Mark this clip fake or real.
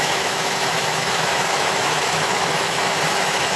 fake